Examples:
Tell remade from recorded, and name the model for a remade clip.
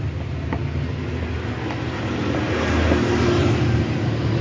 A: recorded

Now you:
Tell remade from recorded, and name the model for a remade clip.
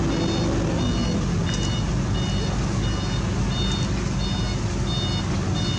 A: recorded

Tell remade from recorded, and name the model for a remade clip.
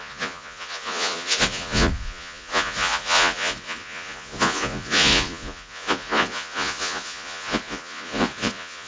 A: remade, vocoder, Vocos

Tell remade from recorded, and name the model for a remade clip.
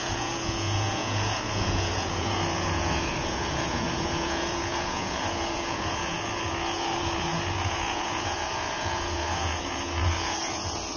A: remade, vocoder, Vocos